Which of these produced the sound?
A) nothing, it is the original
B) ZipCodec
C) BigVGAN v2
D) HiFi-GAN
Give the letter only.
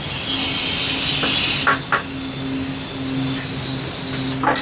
A